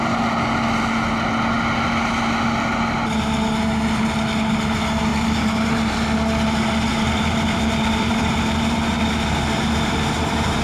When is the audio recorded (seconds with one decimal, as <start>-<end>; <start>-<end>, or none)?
0.0-5.1; 5.9-6.9; 8.8-10.6